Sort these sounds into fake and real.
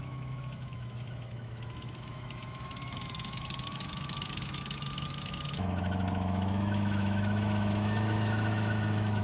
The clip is fake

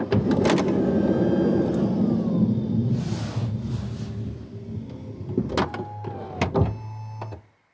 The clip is real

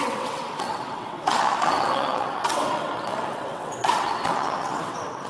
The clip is fake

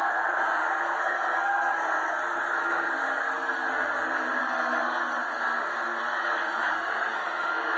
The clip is fake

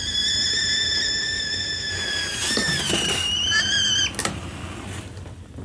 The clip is real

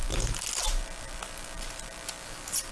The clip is real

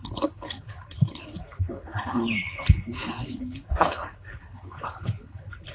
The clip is fake